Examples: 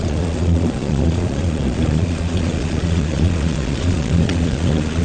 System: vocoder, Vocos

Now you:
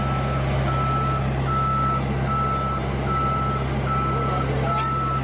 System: none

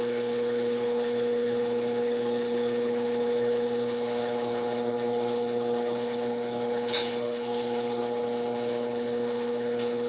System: codec, HILCodec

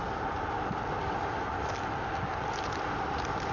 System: none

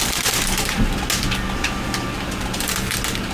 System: none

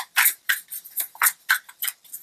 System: none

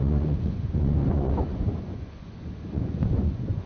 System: vocoder, Vocos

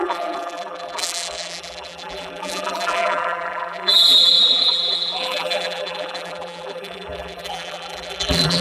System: vocoder, BigVGAN v2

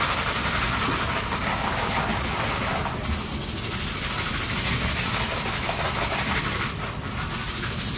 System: none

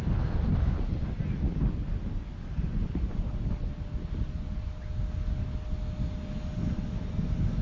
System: none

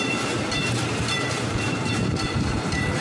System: vocoder, BigVGAN v2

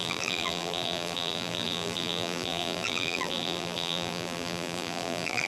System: vocoder, BigVGAN v2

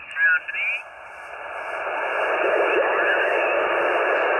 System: none